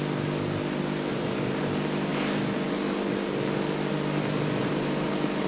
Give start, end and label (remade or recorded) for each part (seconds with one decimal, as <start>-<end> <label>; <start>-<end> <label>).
0.0-1.1 recorded; 1.1-1.7 remade; 1.7-4.6 recorded; 4.6-5.1 remade; 5.1-5.5 recorded